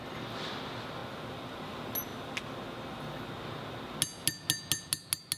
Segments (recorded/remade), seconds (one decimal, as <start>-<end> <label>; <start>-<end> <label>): 0.0-5.4 recorded